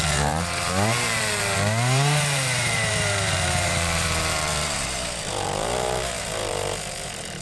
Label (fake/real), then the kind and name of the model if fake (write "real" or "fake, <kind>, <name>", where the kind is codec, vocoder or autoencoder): fake, vocoder, BigVGAN v2